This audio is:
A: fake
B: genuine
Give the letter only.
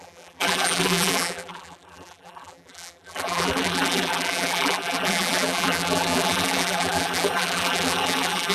A